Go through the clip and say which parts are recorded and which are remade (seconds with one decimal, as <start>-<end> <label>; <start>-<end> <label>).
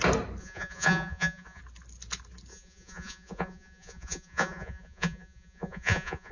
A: 0.0-0.4 recorded; 0.4-1.6 remade; 1.6-2.5 recorded; 2.5-6.3 remade